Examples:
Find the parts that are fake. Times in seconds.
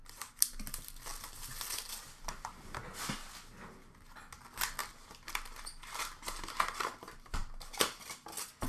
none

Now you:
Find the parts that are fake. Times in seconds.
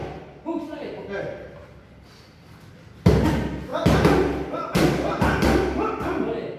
none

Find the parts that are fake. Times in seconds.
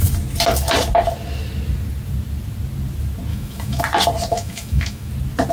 3.3-3.8; 4.3-5.1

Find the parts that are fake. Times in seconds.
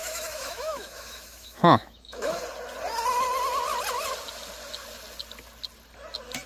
0.0-2.4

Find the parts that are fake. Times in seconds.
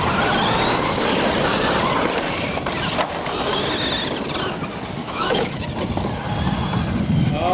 5.0-5.6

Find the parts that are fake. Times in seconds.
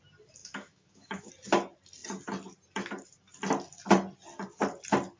0.4-1.3